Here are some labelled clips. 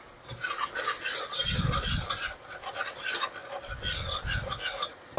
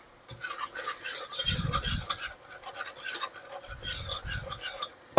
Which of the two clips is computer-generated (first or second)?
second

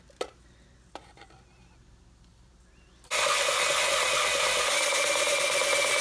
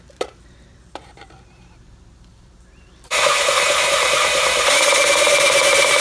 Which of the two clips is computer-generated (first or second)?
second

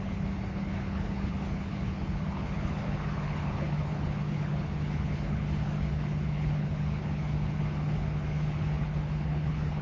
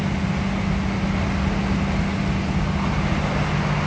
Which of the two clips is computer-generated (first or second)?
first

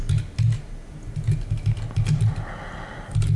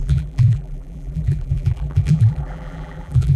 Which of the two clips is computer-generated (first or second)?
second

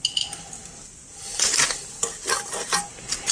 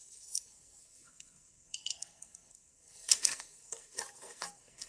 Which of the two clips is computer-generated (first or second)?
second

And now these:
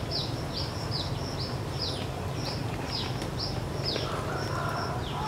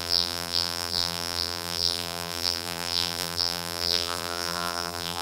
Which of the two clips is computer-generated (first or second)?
second